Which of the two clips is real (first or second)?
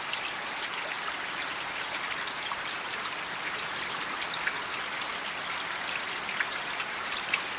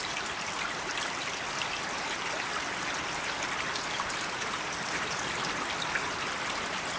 first